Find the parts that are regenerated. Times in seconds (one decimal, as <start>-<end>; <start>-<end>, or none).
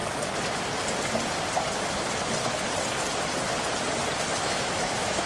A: 4.3-5.3